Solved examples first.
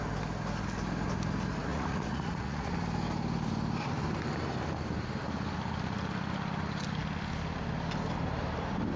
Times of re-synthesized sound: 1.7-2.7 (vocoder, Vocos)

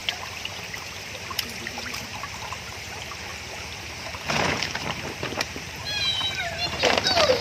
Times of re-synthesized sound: 0.0-3.3 (vocoder, BigVGAN v2); 4.2-7.4

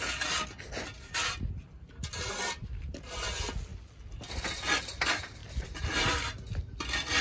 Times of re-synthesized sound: none

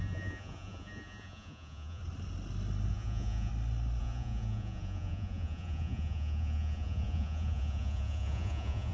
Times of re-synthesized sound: 0.0-2.0 (vocoder, Vocos); 2.9-3.5; 4.0-8.9